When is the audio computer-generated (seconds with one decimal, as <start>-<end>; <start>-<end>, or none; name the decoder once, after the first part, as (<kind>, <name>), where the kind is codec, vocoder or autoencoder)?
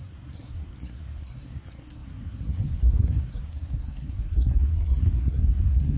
0.0-6.0 (codec, SNAC)